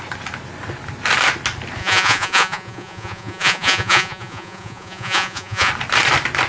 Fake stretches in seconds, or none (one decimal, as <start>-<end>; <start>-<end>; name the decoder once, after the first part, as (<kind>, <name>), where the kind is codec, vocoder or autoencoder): 1.8-5.7 (vocoder, Vocos)